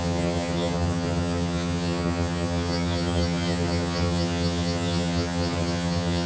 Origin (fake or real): fake